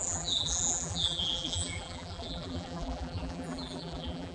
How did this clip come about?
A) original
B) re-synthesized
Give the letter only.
B